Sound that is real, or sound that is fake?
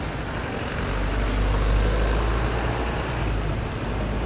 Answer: real